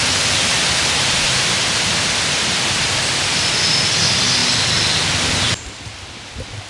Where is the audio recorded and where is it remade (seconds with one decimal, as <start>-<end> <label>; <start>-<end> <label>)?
0.0-6.7 recorded